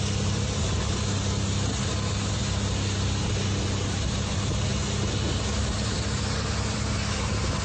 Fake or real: real